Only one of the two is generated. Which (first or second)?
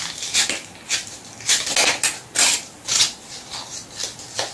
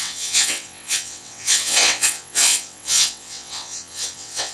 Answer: second